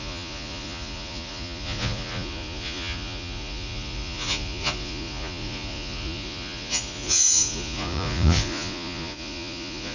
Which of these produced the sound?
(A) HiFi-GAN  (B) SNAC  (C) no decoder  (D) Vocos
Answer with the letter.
D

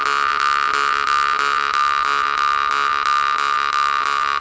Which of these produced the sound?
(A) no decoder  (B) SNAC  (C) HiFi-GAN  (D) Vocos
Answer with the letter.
A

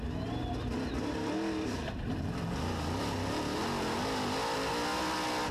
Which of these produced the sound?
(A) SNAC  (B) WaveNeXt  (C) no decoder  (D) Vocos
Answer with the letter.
C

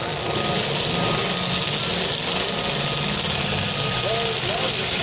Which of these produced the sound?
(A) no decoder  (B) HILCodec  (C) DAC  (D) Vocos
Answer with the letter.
A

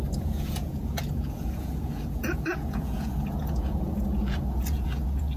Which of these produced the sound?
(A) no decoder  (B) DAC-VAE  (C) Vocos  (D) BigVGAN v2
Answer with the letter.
C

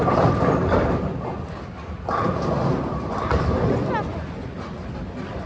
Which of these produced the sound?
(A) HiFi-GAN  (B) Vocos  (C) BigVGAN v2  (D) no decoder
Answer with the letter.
D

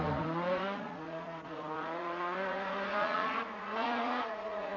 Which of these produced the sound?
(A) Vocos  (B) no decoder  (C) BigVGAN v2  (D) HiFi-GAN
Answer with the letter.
A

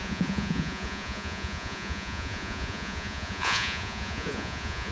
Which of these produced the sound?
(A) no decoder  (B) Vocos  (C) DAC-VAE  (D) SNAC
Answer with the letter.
B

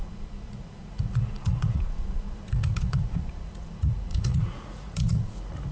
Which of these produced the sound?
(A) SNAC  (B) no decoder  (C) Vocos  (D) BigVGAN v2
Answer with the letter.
C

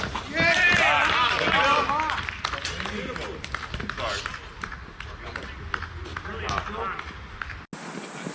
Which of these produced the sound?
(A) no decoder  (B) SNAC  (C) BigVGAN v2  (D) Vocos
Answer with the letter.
A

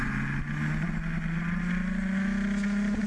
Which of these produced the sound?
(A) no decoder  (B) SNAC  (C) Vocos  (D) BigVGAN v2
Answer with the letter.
A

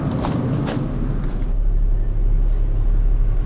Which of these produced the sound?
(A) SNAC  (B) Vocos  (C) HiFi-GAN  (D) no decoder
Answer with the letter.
D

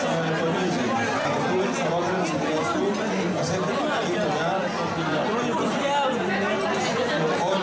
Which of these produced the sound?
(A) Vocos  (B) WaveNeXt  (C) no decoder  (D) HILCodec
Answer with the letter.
C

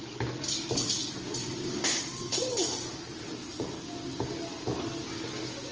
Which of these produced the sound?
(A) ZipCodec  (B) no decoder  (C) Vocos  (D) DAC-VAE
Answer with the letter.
B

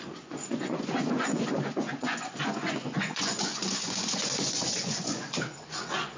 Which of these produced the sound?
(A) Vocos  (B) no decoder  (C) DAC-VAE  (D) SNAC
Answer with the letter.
A